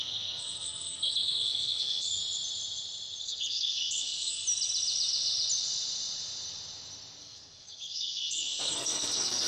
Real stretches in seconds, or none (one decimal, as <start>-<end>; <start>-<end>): 2.2-3.2; 4.4-7.2

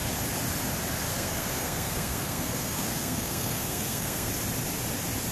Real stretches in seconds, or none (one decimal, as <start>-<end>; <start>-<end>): 0.0-1.1; 4.3-5.3

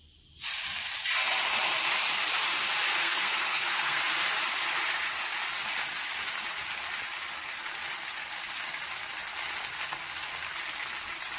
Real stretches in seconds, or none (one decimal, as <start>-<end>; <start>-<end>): 0.0-3.0; 4.0-11.4

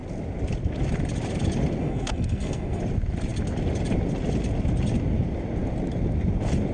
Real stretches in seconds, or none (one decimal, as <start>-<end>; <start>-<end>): 0.0-1.8; 2.8-6.7

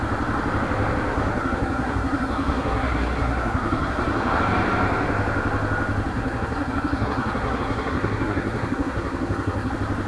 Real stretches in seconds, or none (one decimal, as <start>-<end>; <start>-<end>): 0.0-1.1; 4.4-6.1; 9.7-10.1

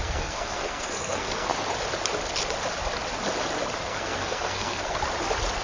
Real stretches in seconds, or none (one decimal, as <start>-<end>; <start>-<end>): 1.5-3.8; 5.0-5.6

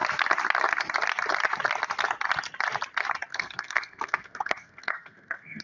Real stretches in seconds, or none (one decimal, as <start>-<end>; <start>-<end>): 0.0-3.3